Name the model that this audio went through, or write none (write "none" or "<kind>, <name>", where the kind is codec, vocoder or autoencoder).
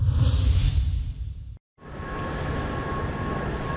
none